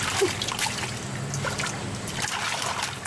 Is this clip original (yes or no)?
yes